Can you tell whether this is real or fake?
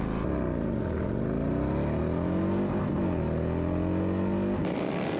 real